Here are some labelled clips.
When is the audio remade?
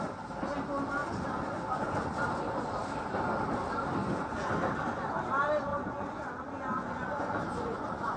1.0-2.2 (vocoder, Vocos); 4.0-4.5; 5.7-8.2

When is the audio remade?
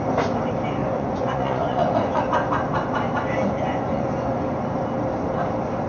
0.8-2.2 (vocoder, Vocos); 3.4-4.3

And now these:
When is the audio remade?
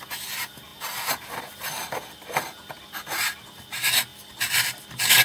4.1-4.8 (vocoder, BigVGAN v2)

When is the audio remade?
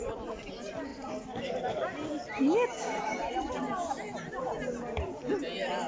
none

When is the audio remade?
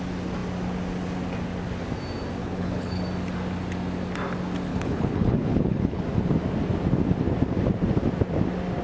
2.4-3.0 (codec, HILCodec); 4.7-6.0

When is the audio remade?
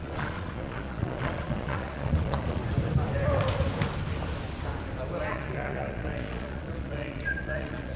0.0-2.6 (vocoder, Vocos); 5.3-8.0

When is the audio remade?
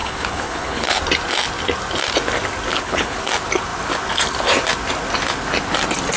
0.0-1.0 (codec, HILCodec); 2.7-3.3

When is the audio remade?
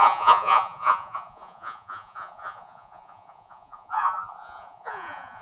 0.0-5.4 (vocoder, Vocos)